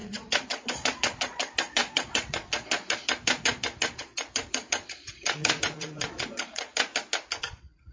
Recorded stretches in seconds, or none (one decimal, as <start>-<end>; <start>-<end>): 6.9-7.4